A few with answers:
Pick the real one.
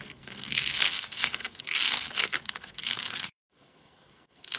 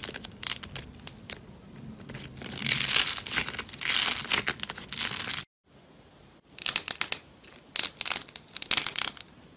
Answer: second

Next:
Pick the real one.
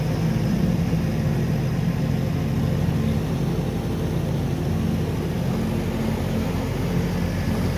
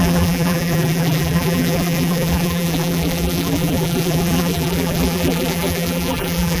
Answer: first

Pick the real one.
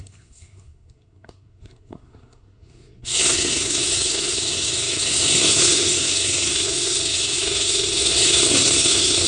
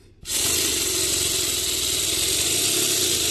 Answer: second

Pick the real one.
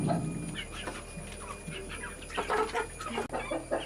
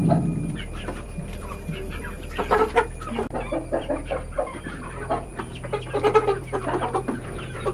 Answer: first